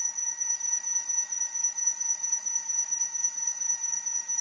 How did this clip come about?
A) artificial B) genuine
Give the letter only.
A